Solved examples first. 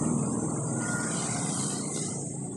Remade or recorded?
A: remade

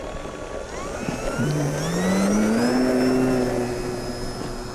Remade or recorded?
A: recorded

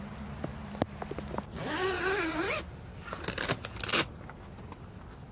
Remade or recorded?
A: recorded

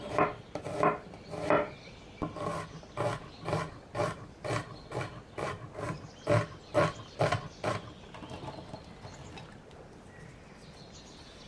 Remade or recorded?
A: recorded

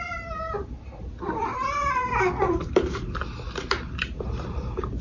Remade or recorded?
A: recorded